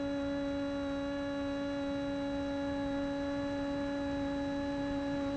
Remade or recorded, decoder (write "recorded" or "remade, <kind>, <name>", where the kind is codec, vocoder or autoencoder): recorded